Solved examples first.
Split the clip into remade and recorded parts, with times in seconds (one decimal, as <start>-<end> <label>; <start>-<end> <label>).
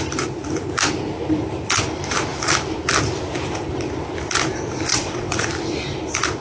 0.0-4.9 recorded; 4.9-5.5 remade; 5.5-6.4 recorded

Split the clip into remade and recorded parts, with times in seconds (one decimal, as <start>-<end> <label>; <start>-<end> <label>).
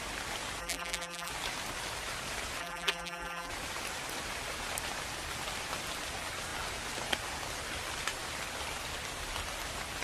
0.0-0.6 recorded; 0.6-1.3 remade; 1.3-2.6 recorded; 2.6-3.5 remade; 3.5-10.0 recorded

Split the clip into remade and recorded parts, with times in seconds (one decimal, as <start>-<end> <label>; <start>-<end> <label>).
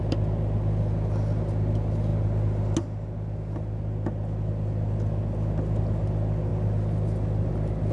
0.0-7.9 recorded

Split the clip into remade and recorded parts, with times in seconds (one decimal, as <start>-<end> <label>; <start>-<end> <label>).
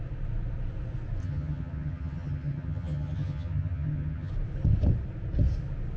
0.0-1.2 recorded; 1.2-4.3 remade; 4.3-6.0 recorded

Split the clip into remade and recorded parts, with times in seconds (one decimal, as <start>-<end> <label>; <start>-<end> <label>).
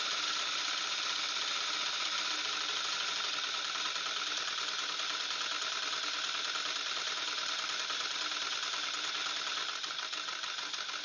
0.0-11.0 recorded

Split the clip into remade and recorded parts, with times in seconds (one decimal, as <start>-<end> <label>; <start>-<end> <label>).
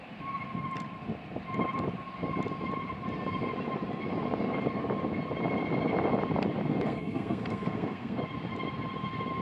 0.0-6.7 recorded; 6.7-8.2 remade; 8.2-9.4 recorded